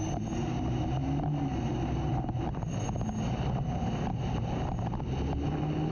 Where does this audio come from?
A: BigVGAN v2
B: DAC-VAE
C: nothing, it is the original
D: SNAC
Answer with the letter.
C